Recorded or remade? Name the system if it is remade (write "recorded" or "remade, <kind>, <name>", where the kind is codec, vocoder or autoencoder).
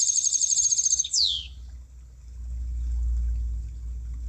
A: recorded